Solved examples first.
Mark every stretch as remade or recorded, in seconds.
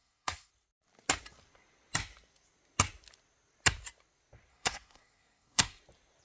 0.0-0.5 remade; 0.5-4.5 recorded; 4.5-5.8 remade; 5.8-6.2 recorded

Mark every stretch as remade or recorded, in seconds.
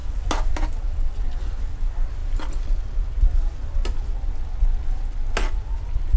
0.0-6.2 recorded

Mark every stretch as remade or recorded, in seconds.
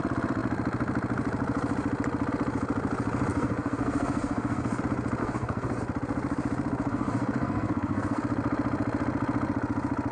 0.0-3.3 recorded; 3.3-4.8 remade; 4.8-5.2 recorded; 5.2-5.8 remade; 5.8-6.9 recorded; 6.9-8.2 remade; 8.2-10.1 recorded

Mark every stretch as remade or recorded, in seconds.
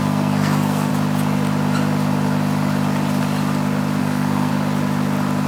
0.0-0.9 remade; 0.9-4.0 recorded; 4.0-4.5 remade; 4.5-5.5 recorded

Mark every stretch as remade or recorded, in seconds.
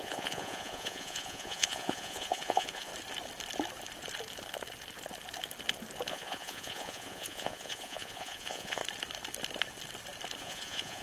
0.0-2.9 remade; 2.9-6.1 recorded; 6.1-8.8 remade; 8.8-10.4 recorded; 10.4-11.0 remade